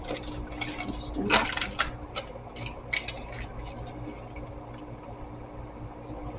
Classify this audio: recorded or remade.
recorded